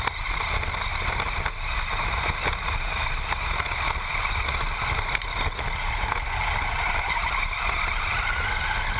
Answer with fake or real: real